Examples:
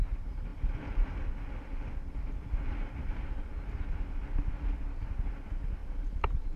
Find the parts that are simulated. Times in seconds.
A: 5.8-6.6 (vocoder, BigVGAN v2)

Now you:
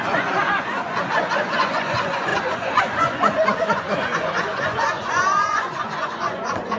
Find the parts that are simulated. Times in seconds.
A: 0.0-6.8 (vocoder, Vocos)